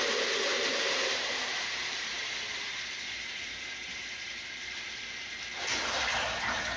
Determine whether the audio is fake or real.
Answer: fake